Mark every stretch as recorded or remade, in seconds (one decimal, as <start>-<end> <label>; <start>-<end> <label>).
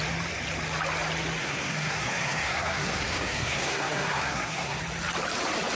0.0-1.4 recorded; 1.4-4.8 remade; 4.8-5.7 recorded